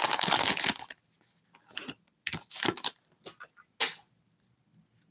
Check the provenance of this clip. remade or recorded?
recorded